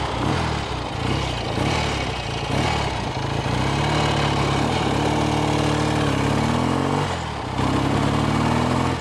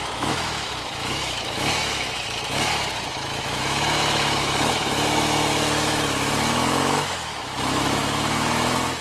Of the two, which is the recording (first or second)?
first